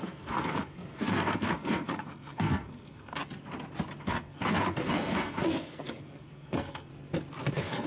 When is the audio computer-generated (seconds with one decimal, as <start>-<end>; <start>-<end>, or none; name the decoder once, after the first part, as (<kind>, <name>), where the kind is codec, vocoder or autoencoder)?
0.0-3.2 (codec, SNAC); 4.0-6.9; 7.5-7.9